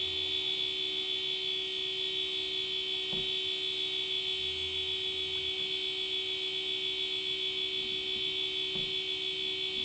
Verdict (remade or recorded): recorded